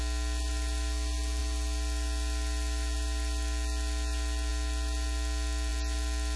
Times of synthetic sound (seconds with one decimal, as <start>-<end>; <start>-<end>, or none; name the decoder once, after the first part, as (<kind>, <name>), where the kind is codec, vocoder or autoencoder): none